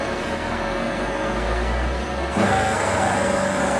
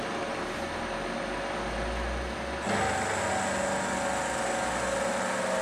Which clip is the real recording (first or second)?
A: second